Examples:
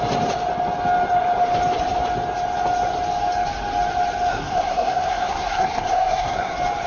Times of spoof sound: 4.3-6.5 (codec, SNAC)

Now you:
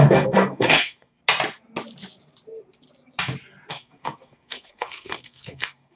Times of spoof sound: 0.0-1.2 (codec, SNAC); 3.7-6.0

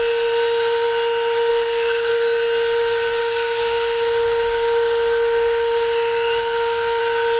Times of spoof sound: 1.5-2.1 (codec, SNAC); 3.2-7.0

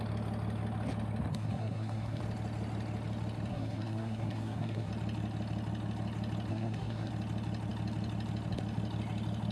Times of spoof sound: 1.3-2.2 (codec, SNAC); 3.5-4.9; 6.5-7.1

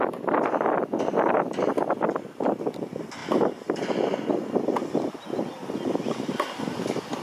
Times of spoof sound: none

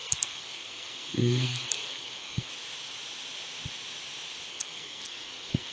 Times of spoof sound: 0.0-2.5 (codec, SNAC); 4.5-5.7

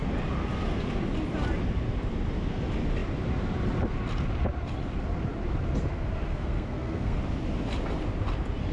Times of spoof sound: 6.3-7.2 (codec, SNAC)

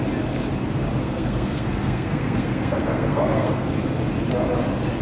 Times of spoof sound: 1.0-3.7 (codec, SNAC)